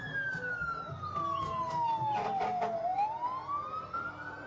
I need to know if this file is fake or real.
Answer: real